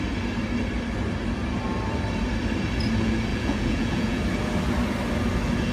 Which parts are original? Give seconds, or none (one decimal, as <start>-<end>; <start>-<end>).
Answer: 0.0-3.3; 4.2-5.7